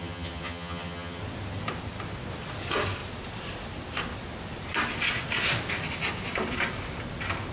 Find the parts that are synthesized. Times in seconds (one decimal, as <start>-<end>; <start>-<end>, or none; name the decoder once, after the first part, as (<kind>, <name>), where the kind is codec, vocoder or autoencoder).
0.0-1.2 (vocoder, HiFi-GAN)